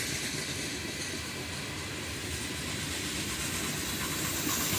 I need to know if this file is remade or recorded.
recorded